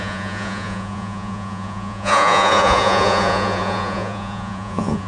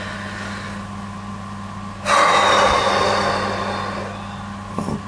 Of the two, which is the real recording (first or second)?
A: second